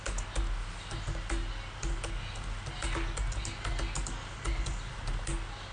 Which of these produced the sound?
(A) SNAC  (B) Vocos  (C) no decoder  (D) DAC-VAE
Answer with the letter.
C